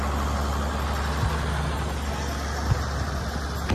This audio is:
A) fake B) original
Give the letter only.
B